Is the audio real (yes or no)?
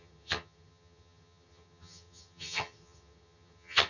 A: no